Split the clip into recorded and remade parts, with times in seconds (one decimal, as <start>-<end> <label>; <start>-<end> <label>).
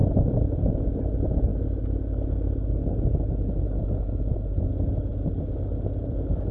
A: 0.0-6.5 recorded